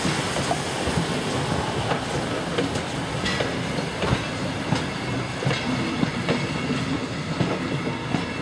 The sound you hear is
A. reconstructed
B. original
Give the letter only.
B